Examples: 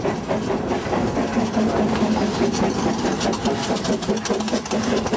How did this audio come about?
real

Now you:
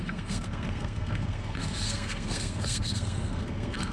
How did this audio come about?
fake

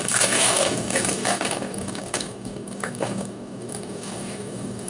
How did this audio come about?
fake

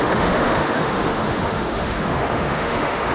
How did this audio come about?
fake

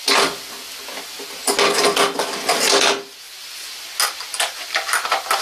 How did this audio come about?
real